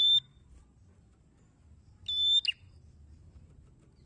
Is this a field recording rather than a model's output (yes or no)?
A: yes